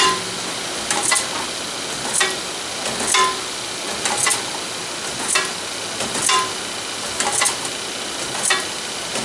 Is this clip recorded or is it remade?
recorded